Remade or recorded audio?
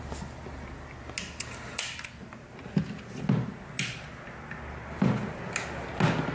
recorded